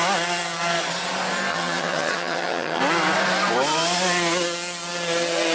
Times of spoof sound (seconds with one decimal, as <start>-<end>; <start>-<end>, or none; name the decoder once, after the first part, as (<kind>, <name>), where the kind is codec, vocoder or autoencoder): 1.5-2.8 (vocoder, HiFi-GAN)